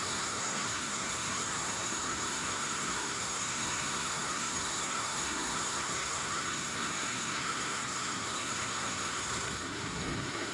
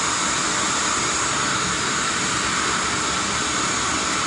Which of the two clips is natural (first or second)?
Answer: second